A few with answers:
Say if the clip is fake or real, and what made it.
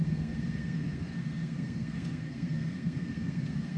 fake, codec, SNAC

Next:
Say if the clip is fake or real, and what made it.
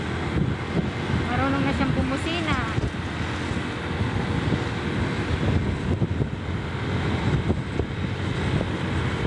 real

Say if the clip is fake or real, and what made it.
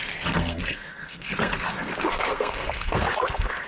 fake, codec, SNAC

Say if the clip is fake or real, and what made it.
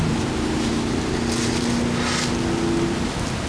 real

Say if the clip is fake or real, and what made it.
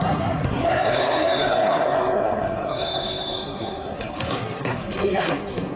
fake, codec, SNAC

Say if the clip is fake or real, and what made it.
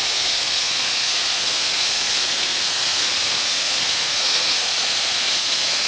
fake, codec, SNAC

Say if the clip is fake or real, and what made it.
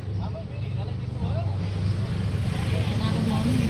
real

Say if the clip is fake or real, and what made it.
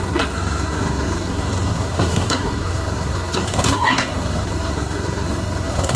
fake, codec, SNAC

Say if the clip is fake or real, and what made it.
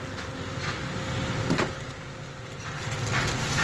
real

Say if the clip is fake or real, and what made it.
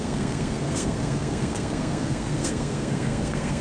fake, codec, SNAC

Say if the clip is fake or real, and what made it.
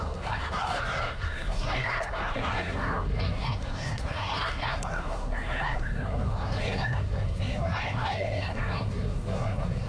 fake, codec, SNAC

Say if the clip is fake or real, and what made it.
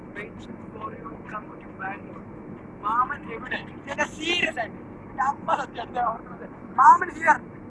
real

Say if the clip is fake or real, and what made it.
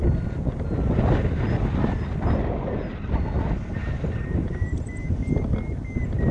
real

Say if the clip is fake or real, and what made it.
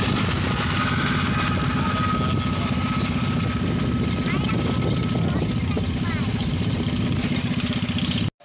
real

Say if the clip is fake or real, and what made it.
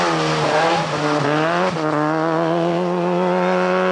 real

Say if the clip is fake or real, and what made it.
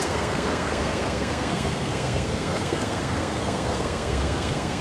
fake, codec, SNAC